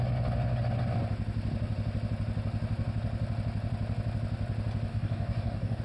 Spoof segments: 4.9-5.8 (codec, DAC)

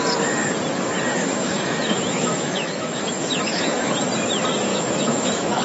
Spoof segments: 1.1-3.9 (autoencoder, DAC-VAE); 4.7-5.6